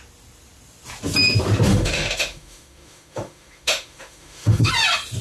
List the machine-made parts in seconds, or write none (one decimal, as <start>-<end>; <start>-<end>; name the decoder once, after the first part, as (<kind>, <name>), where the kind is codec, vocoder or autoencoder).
1.7-4.7 (autoencoder, DAC-VAE)